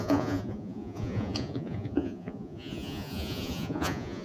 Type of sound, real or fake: fake